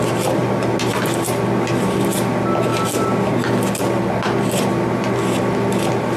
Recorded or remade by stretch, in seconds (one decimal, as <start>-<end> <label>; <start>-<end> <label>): 0.0-6.2 recorded